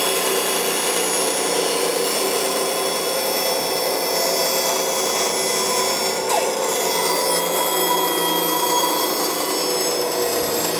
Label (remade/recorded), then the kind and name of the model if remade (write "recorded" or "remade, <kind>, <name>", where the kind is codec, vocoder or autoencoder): recorded